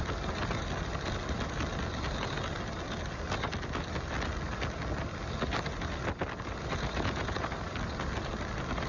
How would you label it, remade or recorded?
recorded